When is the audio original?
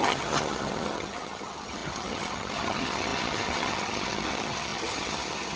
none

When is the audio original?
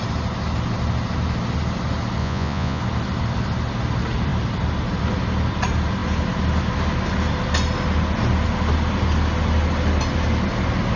0.0-2.2; 2.8-11.0